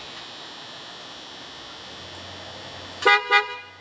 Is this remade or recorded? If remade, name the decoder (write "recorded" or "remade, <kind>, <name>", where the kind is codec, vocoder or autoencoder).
recorded